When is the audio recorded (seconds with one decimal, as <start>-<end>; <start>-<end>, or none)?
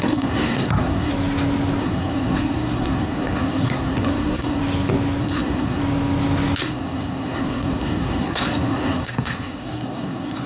1.1-1.8; 4.6-5.2; 5.8-6.6